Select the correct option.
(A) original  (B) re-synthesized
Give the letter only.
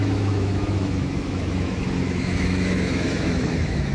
B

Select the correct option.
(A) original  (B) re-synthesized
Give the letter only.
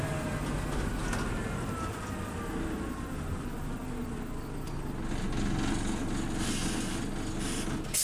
A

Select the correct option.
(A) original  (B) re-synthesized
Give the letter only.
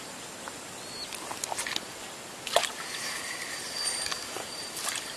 A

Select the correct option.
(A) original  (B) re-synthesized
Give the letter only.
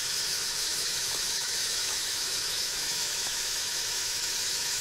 B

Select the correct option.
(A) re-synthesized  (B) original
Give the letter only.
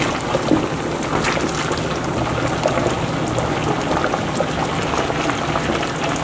B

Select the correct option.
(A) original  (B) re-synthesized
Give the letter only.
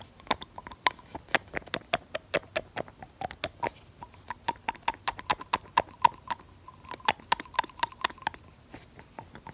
A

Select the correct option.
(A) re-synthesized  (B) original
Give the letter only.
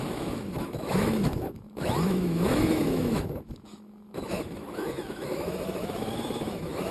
A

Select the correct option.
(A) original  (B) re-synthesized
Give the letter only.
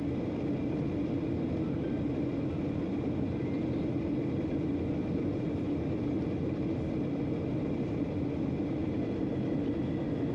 A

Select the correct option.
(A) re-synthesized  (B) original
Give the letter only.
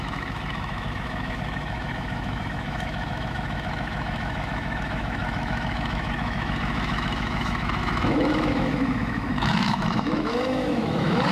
A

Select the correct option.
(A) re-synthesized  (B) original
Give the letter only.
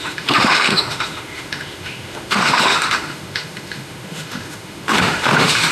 A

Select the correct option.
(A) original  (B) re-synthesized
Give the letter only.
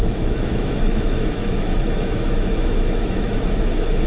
B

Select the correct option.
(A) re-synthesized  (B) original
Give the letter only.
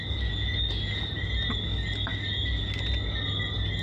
B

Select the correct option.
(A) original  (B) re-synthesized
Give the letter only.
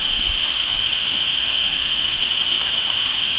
B